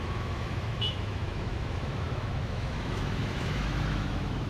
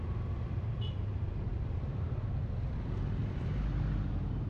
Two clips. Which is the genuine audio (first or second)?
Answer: second